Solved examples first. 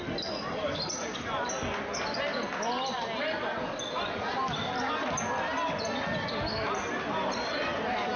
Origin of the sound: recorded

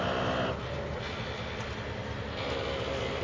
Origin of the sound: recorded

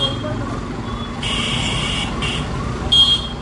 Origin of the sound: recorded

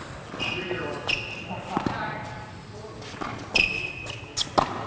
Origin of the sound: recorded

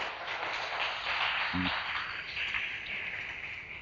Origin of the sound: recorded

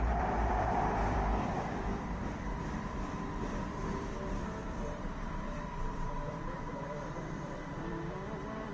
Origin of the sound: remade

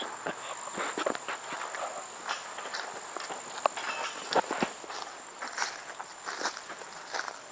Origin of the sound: recorded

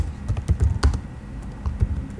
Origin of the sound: recorded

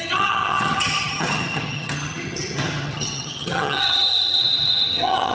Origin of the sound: remade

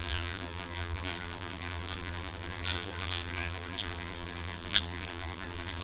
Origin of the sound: remade